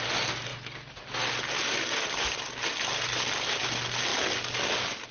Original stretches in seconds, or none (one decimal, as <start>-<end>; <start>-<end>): 0.0-5.1